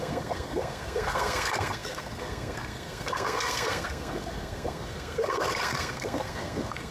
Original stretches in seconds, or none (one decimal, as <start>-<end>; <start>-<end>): none